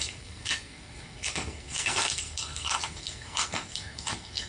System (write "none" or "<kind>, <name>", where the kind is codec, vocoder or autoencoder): codec, SNAC